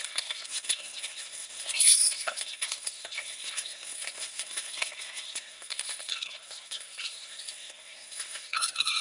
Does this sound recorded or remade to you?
remade